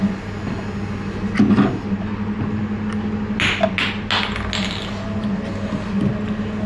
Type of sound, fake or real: real